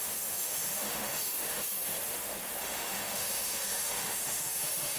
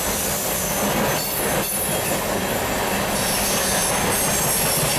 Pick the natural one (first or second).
second